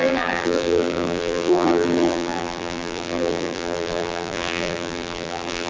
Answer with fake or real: fake